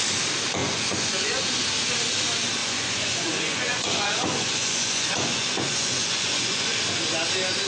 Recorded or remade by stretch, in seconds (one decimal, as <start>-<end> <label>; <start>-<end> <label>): 0.0-0.6 recorded; 0.6-1.4 remade; 1.4-2.6 recorded; 2.6-6.8 remade; 6.8-7.7 recorded